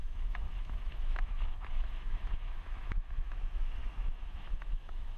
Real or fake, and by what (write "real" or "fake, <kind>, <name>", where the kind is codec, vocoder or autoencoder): fake, autoencoder, DAC-VAE